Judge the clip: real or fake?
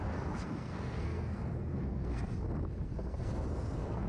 fake